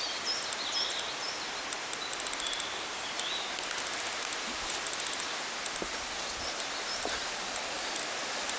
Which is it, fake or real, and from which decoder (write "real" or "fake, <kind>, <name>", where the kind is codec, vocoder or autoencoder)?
real